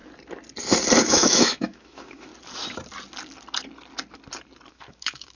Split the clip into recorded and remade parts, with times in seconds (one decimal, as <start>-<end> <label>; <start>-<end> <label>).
0.0-1.0 recorded; 1.0-2.3 remade; 2.3-4.7 recorded; 4.7-5.4 remade